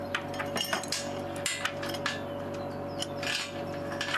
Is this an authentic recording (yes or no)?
yes